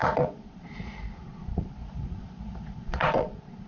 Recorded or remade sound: remade